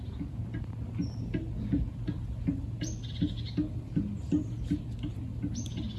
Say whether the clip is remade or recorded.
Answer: recorded